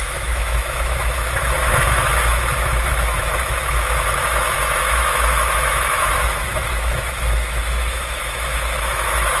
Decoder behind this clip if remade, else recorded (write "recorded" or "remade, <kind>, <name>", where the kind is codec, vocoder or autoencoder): remade, autoencoder, DAC-VAE